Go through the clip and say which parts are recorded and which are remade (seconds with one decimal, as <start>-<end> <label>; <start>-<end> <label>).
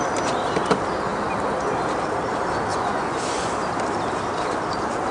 0.0-2.7 recorded; 2.7-3.5 remade; 3.5-5.1 recorded